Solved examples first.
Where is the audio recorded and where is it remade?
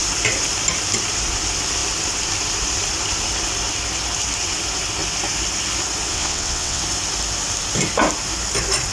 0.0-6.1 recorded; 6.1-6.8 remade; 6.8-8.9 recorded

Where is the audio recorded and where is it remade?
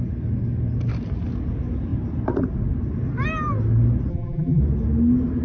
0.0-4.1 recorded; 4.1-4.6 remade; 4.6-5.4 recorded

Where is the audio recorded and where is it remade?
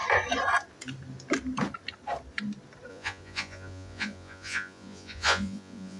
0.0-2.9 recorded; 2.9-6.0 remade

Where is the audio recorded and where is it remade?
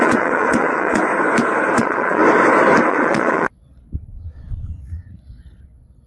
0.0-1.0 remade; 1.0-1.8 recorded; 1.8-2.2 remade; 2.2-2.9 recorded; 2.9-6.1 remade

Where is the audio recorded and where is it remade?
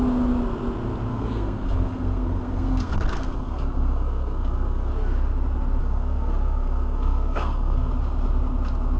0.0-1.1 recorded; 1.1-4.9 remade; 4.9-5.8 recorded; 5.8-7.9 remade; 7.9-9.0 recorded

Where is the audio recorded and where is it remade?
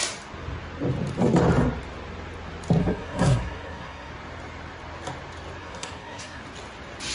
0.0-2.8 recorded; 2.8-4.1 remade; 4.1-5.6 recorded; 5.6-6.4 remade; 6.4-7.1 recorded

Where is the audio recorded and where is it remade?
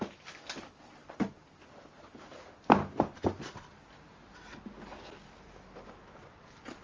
0.0-6.8 recorded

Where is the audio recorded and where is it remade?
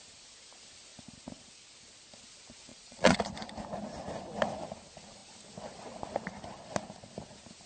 0.0-2.7 recorded; 2.7-3.2 remade; 3.2-7.7 recorded